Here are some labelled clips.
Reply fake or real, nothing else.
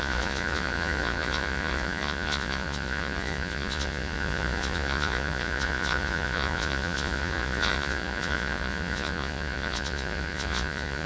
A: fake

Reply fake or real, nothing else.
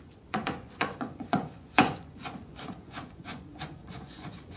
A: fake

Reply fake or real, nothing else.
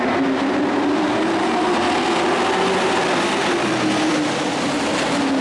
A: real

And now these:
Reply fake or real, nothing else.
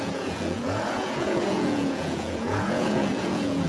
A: fake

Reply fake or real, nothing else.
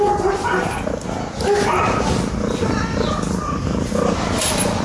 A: real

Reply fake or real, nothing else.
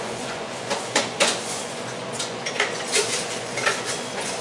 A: fake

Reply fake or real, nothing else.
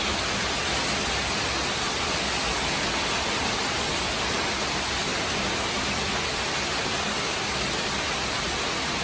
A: real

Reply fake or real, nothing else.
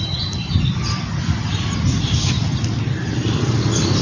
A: real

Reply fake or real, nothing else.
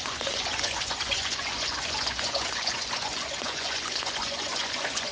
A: fake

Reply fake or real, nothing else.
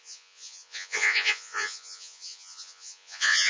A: fake